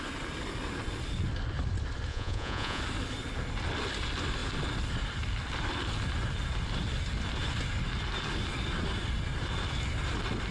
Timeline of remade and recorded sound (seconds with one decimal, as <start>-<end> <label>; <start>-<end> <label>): 0.0-2.1 recorded; 2.1-2.8 remade; 2.8-10.5 recorded